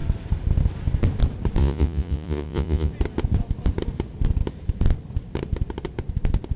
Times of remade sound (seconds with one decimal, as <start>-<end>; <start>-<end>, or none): 1.6-2.9

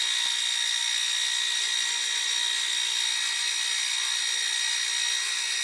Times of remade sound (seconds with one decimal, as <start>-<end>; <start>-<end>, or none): none

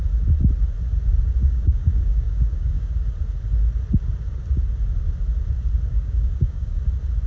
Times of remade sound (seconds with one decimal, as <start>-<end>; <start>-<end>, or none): 1.4-2.9; 5.9-6.8

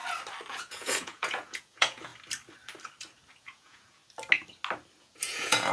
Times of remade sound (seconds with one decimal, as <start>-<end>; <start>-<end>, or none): 0.5-2.1; 3.4-4.0; 5.0-5.7

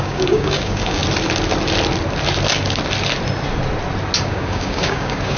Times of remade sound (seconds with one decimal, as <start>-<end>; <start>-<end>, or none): 0.0-1.0; 4.2-5.4